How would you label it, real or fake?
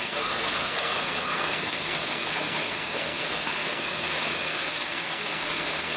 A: fake